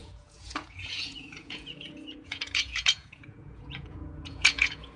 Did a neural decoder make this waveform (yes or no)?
yes